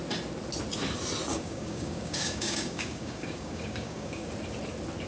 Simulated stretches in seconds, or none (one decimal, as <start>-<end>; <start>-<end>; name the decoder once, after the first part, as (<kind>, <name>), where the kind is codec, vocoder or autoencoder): 1.3-4.3 (codec, DAC)